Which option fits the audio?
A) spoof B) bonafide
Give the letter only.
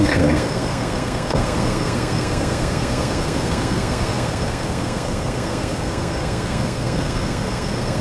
A